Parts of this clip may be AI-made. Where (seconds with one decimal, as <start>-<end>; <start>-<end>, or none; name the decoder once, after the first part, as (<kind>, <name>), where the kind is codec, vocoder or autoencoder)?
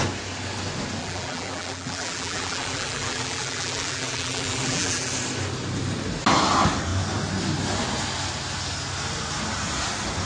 1.0-5.1 (vocoder, BigVGAN v2)